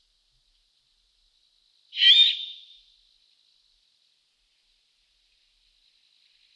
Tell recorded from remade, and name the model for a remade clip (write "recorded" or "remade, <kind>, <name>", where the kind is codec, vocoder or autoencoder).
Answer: recorded